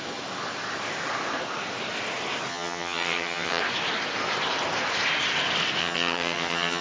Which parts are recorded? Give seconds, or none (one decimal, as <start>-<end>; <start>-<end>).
0.0-2.5; 3.6-5.8